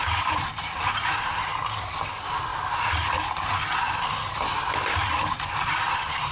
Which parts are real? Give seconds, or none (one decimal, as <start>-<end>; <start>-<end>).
1.5-2.1; 2.5-5.3